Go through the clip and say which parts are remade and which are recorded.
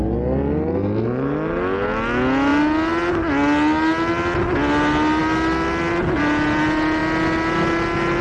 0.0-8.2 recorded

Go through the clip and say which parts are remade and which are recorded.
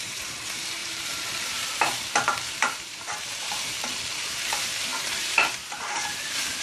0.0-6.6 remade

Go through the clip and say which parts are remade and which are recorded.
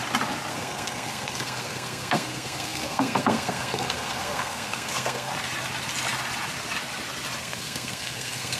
0.0-0.5 recorded; 0.5-5.3 remade; 5.3-7.4 recorded; 7.4-8.6 remade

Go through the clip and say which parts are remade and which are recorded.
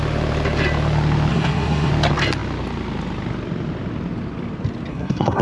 0.0-1.3 recorded; 1.3-1.9 remade; 1.9-4.9 recorded; 4.9-5.4 remade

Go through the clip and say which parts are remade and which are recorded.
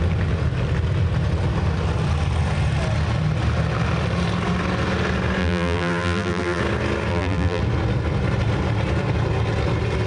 0.0-5.4 recorded; 5.4-6.6 remade; 6.6-7.1 recorded; 7.1-7.6 remade; 7.6-10.1 recorded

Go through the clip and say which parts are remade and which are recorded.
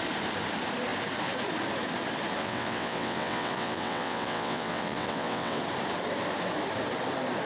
0.0-2.4 recorded; 2.4-5.6 remade; 5.6-7.5 recorded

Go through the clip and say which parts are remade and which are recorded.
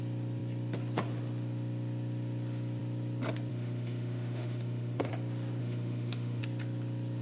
0.0-3.5 recorded; 3.5-5.1 remade; 5.1-5.6 recorded; 5.6-6.4 remade; 6.4-7.2 recorded